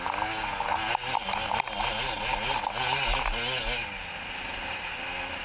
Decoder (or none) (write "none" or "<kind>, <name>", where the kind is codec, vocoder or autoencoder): none